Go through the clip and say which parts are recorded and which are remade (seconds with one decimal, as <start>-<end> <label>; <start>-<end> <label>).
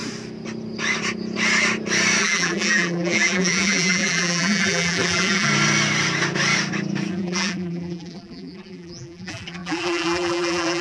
0.0-2.2 recorded; 2.2-5.5 remade; 5.5-7.1 recorded; 7.1-10.8 remade